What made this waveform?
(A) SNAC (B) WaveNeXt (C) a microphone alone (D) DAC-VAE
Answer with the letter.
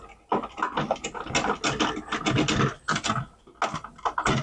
C